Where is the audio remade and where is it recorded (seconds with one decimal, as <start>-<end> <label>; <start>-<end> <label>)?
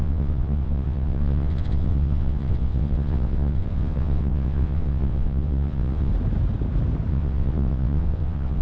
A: 0.0-6.1 remade; 6.1-7.1 recorded; 7.1-8.6 remade